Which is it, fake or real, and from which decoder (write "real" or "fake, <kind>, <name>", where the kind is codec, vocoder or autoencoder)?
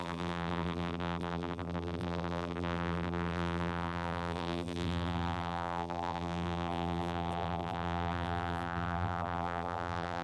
fake, vocoder, BigVGAN v2